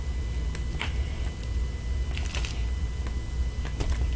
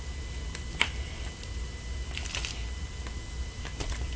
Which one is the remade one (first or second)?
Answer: second